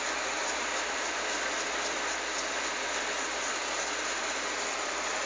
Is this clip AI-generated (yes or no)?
no